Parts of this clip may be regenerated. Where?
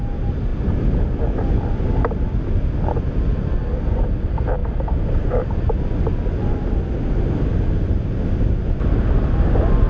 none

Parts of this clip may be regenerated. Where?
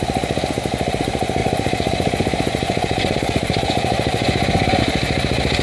1.4-4.8 (vocoder, Vocos)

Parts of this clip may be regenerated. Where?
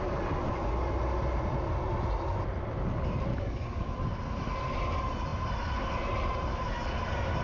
3.3-3.9 (codec, DAC)